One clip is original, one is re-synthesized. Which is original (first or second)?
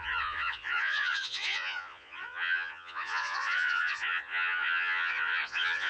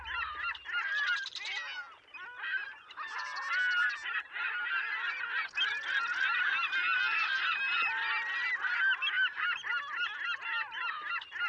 second